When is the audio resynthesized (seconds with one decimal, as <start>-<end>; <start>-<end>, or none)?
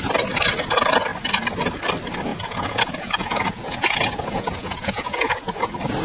2.3-5.5